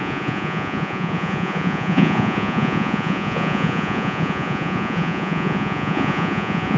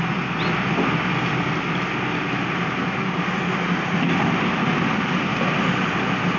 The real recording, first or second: second